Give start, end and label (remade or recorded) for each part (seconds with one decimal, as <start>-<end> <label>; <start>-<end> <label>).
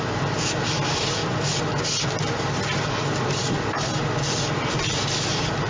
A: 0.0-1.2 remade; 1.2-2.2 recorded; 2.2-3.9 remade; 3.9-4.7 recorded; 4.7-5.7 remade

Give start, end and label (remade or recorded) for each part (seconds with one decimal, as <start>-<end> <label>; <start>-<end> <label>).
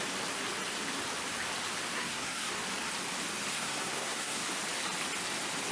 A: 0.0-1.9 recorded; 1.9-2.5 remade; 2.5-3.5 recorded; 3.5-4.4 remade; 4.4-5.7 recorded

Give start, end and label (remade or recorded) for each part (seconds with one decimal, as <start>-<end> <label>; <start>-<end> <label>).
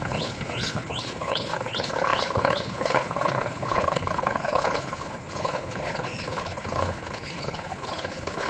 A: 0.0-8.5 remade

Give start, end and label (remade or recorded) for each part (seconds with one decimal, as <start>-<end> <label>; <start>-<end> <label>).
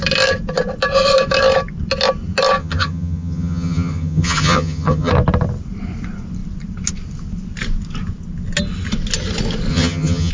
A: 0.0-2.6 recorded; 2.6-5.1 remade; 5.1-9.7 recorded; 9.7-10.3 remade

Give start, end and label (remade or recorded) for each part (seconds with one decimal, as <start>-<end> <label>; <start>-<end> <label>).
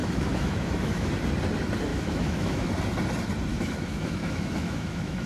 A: 0.0-1.1 remade; 1.1-1.9 recorded; 1.9-2.7 remade; 2.7-3.5 recorded; 3.5-5.3 remade